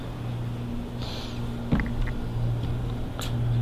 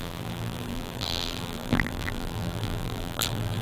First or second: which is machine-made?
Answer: second